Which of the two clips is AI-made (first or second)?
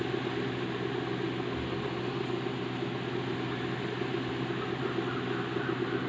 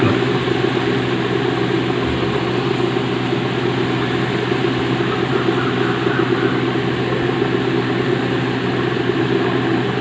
second